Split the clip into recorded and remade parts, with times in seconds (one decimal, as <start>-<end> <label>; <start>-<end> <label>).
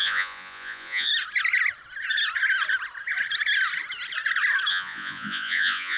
0.0-1.1 remade; 1.1-4.7 recorded; 4.7-6.0 remade